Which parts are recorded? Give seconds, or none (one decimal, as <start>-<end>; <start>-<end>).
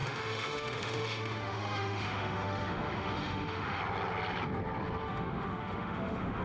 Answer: 3.8-5.0